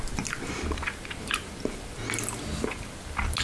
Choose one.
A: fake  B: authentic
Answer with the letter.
B